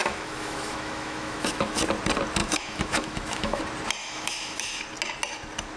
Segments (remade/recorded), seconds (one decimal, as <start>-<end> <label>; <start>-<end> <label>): 0.0-1.8 remade; 1.8-2.4 recorded; 2.4-3.6 remade; 3.6-4.0 recorded; 4.0-4.8 remade; 4.8-5.8 recorded